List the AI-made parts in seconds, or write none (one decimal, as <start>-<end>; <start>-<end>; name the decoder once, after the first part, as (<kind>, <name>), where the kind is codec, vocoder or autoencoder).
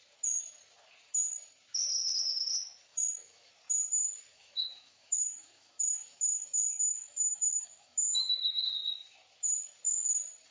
2.9-3.5 (autoencoder, DAC-VAE); 4.3-8.7